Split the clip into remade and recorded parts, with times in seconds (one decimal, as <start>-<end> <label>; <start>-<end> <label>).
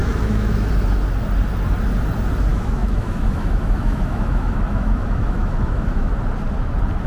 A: 0.0-0.7 remade; 0.7-2.5 recorded; 2.5-6.1 remade; 6.1-7.1 recorded